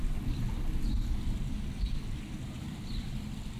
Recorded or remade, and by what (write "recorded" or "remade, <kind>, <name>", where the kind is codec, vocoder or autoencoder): recorded